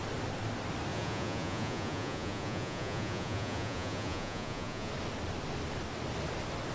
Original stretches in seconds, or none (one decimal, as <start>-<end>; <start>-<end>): 0.0-0.9; 4.9-6.7